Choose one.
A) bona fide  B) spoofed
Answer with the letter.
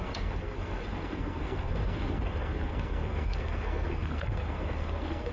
B